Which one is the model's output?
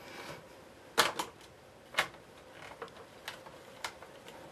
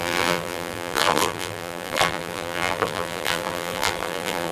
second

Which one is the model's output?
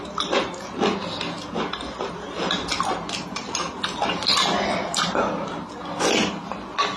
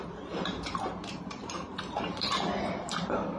second